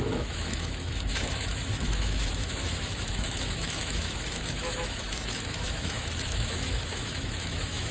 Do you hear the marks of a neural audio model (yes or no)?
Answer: yes